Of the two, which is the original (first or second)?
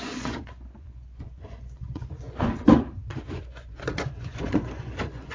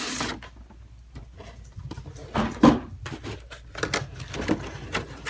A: second